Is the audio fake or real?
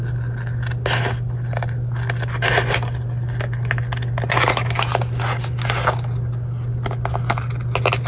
real